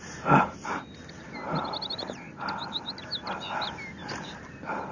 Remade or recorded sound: recorded